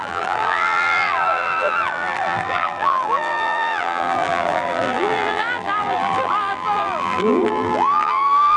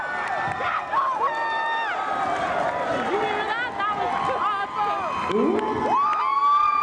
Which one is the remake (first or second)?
first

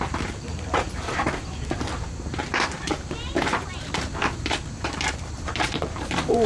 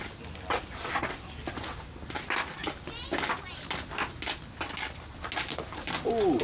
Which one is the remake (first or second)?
first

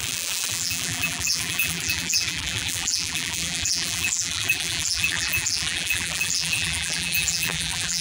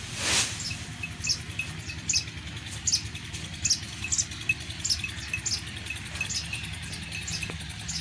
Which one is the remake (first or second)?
first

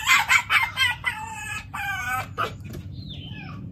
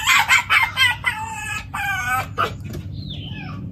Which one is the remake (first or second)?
first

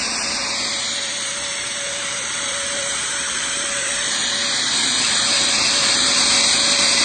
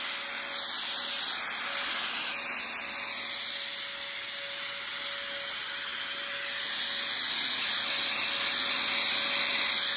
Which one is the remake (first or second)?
first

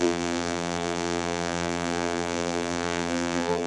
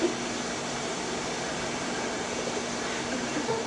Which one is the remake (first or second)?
first